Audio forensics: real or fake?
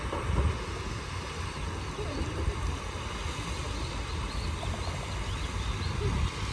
real